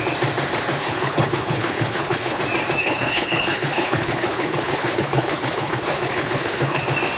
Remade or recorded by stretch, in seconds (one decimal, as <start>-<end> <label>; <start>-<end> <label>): 0.0-0.8 recorded; 0.8-2.4 remade; 2.4-2.8 recorded; 2.8-6.8 remade; 6.8-7.2 recorded